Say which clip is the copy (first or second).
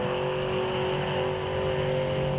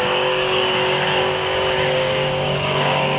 second